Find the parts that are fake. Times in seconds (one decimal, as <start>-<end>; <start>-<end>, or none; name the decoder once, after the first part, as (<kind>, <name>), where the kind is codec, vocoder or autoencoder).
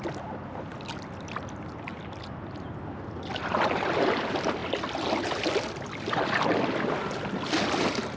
none